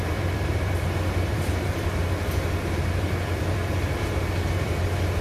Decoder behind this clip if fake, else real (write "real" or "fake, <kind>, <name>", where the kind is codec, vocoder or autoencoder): fake, vocoder, BigVGAN v2